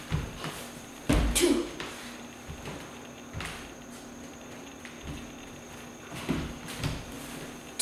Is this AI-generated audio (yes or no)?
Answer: no